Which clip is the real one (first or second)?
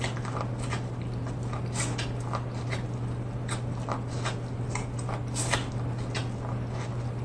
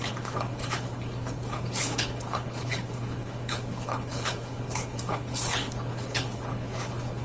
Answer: first